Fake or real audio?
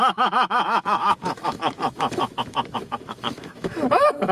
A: fake